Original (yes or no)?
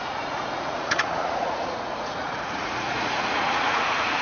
no